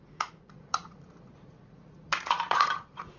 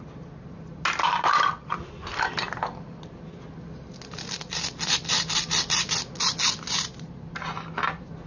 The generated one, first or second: first